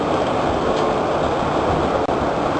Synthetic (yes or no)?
no